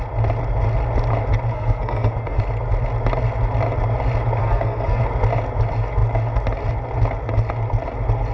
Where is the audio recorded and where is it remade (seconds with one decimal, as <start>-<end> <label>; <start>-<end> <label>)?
0.0-1.5 recorded; 1.5-2.4 remade; 2.4-4.4 recorded; 4.4-5.0 remade; 5.0-8.3 recorded